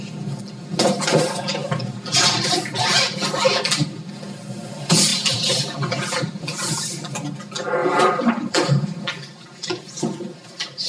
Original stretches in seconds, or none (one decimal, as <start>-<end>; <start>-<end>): 0.0-1.6; 2.8-5.1; 6.9-7.8